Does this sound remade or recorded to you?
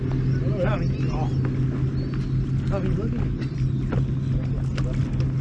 recorded